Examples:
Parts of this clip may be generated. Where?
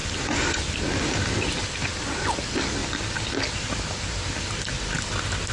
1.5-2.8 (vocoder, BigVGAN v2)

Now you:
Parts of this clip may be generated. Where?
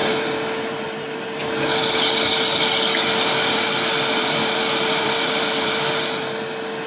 0.0-1.4 (vocoder, BigVGAN v2); 4.2-6.2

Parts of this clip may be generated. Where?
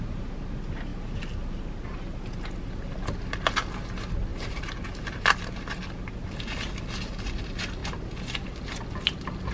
none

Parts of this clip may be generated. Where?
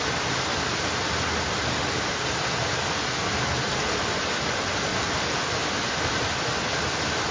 none